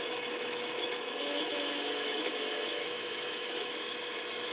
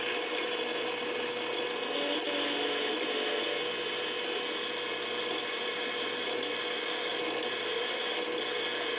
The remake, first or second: first